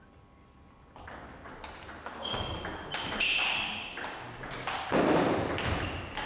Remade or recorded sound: recorded